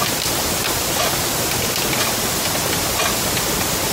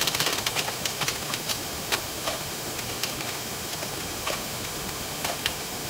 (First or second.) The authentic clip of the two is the first